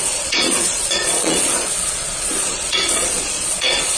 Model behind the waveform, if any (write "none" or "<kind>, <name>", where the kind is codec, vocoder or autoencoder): vocoder, Vocos